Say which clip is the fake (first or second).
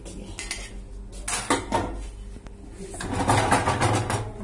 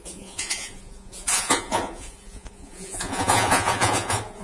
second